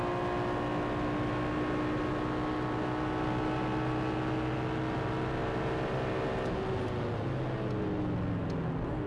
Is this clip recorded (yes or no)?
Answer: yes